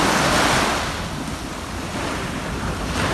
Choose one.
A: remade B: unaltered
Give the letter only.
B